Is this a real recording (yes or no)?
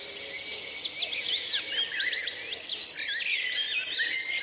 yes